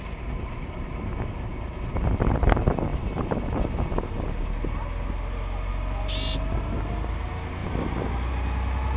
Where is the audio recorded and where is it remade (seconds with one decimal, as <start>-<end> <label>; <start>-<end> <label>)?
0.0-7.6 recorded; 7.6-8.3 remade; 8.3-9.0 recorded